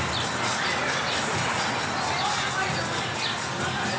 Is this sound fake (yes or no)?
no